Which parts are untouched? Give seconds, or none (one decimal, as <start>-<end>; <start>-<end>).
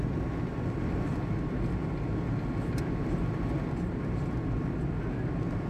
0.0-5.7